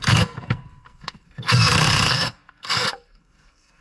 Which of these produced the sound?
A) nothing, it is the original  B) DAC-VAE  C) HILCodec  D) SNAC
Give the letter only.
D